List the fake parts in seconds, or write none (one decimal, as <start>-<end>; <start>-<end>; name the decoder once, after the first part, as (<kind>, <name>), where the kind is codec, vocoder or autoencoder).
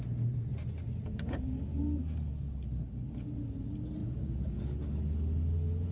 1.0-1.8 (vocoder, Vocos); 4.0-4.7